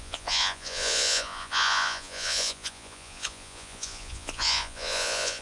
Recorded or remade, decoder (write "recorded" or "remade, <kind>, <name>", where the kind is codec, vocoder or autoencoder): remade, vocoder, Vocos